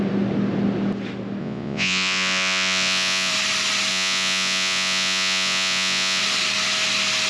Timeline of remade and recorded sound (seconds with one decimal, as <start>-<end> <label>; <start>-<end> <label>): 0.0-1.4 recorded; 1.4-3.3 remade; 3.3-3.9 recorded; 3.9-6.2 remade; 6.2-7.3 recorded